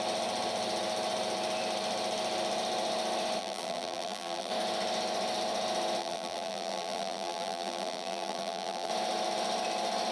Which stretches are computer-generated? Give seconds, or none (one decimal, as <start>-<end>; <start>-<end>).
3.4-4.5; 6.0-8.9